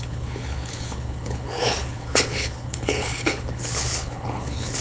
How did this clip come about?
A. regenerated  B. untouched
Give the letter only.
A